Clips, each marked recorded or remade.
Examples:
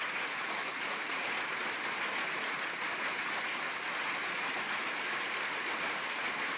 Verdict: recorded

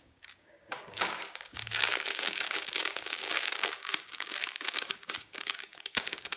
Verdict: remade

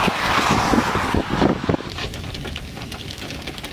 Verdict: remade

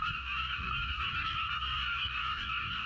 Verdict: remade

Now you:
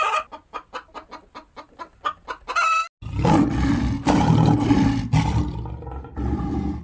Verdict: recorded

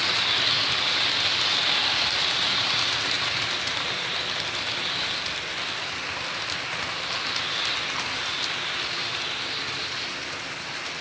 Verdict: recorded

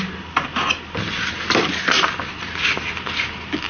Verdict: recorded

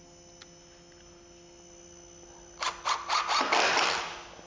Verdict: recorded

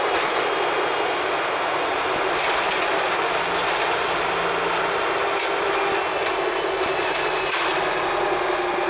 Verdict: recorded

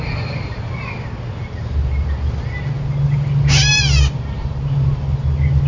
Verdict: recorded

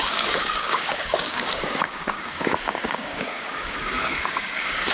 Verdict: remade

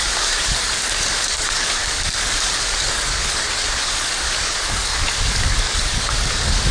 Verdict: remade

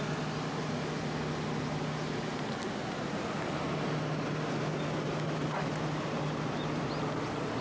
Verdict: recorded